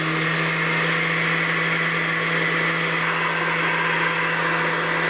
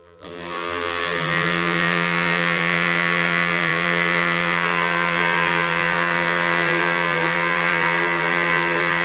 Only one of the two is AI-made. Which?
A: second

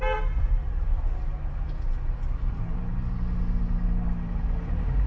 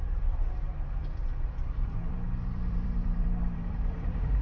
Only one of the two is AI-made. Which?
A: second